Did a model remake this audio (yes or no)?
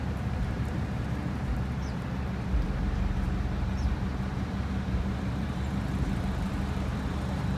yes